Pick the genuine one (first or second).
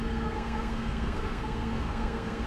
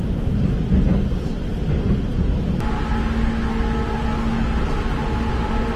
second